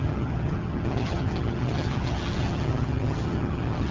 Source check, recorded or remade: remade